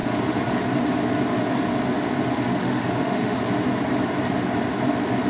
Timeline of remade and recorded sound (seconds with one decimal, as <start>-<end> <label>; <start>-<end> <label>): 0.0-2.6 recorded; 2.6-3.4 remade; 3.4-5.3 recorded